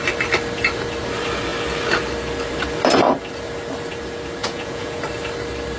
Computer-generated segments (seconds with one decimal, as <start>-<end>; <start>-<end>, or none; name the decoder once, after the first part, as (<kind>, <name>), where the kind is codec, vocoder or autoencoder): 4.4-5.0 (vocoder, Vocos)